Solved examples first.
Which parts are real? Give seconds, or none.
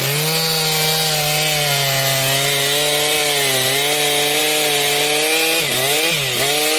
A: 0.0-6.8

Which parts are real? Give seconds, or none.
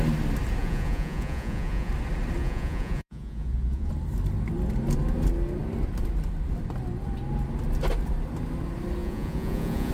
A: 0.0-0.6; 1.9-2.4; 3.9-9.0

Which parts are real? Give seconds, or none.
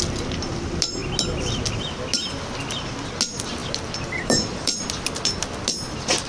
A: 0.0-3.6; 4.8-6.3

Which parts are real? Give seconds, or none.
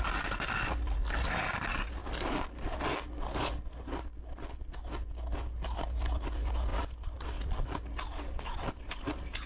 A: 0.0-2.0; 3.0-6.7; 8.8-9.5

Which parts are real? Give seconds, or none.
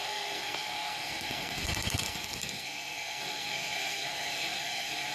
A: none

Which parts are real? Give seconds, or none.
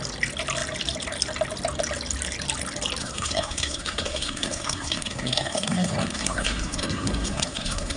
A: 0.0-3.0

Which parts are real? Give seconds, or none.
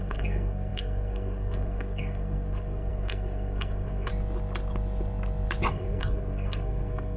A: 4.1-5.7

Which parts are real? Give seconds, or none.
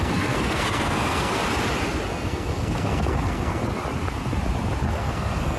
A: 1.4-2.1; 3.6-4.9